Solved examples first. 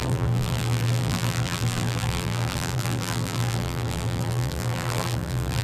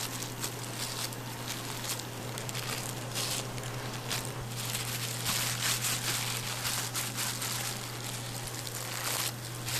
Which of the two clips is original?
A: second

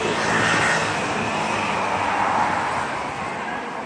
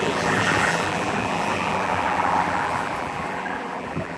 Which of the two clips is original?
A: first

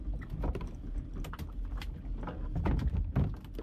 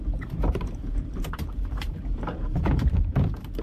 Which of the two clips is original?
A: first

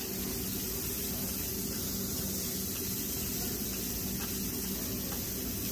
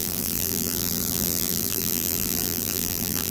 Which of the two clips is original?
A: first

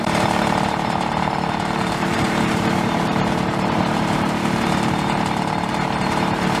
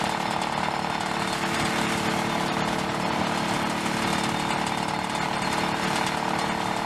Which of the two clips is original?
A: second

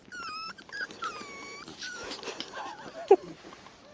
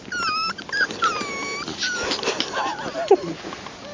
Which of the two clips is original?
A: second